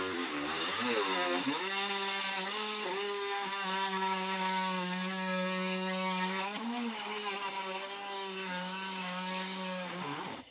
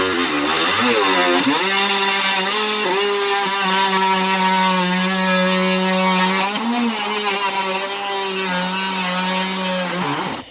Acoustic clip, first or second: second